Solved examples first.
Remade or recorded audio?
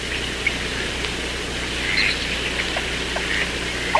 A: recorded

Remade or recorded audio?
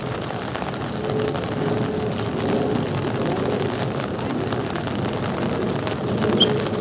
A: recorded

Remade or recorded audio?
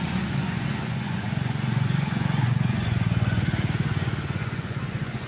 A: remade